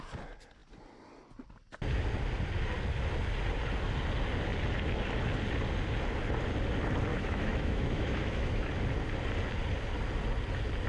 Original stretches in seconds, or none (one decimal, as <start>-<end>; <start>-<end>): 0.0-7.1; 8.7-10.9